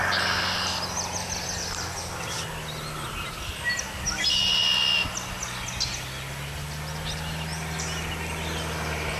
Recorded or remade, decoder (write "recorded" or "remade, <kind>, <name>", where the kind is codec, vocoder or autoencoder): recorded